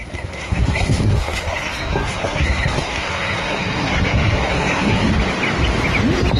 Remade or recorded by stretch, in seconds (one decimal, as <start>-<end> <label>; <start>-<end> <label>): 0.0-5.1 remade; 5.1-6.4 recorded